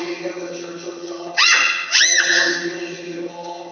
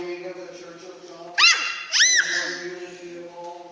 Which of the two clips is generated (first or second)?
first